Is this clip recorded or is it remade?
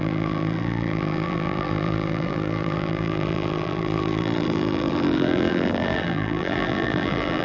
remade